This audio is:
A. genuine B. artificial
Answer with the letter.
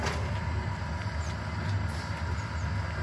A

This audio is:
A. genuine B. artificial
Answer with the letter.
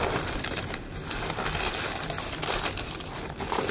A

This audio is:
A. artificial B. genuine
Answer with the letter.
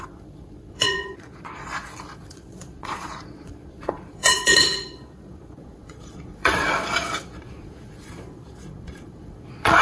A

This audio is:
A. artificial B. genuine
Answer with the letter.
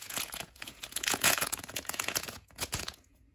A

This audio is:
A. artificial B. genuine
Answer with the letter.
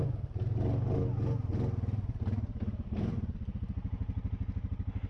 B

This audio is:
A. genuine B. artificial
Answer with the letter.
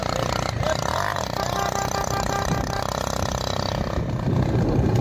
A